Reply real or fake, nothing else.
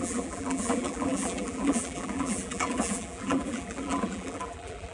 fake